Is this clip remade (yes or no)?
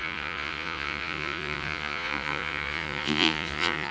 yes